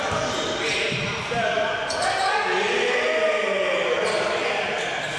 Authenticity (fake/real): real